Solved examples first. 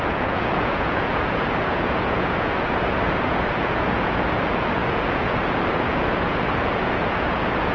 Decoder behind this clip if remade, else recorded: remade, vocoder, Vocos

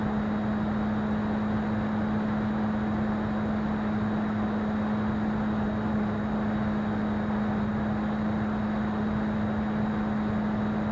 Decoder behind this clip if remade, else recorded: recorded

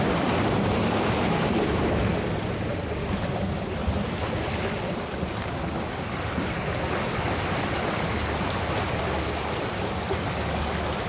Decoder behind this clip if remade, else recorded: recorded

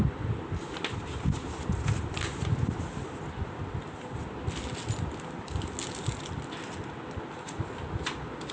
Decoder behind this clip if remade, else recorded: recorded